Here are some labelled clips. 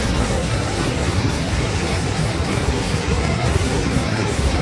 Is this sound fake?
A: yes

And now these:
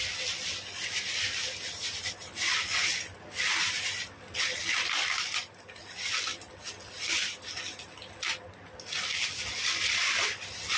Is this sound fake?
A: no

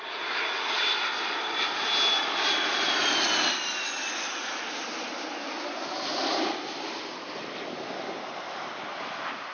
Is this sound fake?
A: no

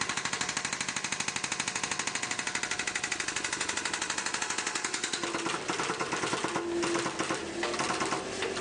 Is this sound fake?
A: no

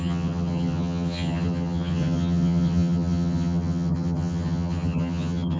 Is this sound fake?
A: yes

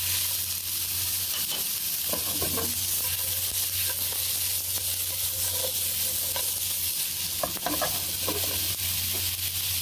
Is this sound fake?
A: no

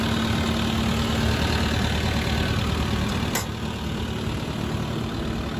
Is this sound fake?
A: no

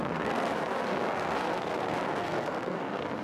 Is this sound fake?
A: yes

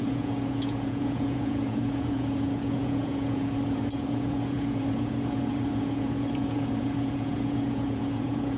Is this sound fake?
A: yes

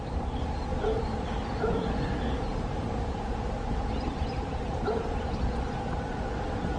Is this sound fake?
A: yes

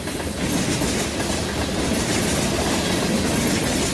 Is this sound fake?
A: no